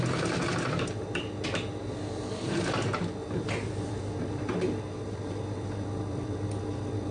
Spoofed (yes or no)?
yes